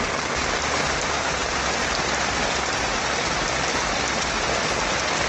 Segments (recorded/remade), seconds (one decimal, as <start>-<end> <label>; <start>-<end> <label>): 0.0-5.3 recorded